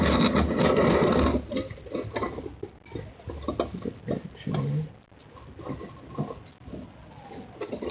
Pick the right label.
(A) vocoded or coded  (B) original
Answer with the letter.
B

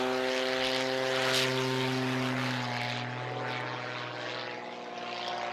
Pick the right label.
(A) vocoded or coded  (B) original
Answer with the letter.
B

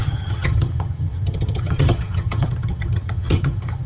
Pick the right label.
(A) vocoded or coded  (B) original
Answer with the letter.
A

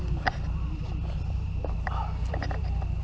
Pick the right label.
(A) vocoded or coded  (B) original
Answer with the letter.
A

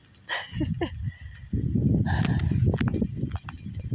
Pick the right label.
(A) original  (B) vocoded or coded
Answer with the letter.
A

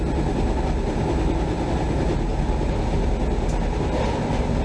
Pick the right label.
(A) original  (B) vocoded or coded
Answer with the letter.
A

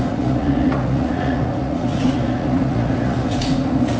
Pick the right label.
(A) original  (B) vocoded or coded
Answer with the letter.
B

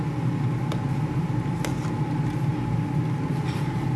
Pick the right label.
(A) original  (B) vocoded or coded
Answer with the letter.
A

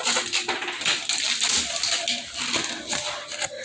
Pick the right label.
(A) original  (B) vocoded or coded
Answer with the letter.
A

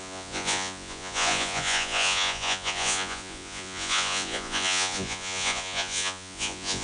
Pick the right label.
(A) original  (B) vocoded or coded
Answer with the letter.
B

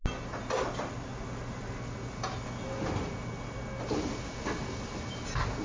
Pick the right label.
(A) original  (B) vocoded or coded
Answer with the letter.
A